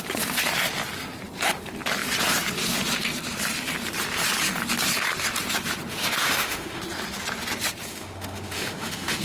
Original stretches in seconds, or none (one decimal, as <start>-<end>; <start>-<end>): 0.0-5.9; 6.8-7.9